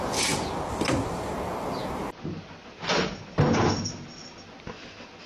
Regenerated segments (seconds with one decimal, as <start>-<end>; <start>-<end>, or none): none